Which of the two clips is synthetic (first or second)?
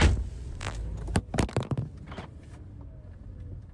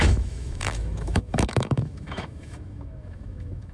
second